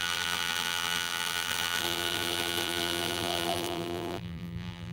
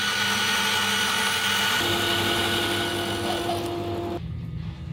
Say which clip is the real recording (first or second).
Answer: second